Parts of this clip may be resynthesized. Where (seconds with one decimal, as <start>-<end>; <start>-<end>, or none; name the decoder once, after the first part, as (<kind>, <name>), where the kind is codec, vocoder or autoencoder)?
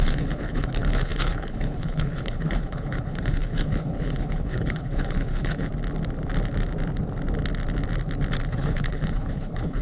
0.0-5.7 (codec, HILCodec); 8.5-9.8